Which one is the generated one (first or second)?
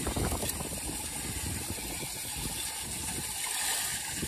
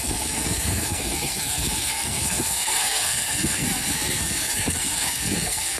second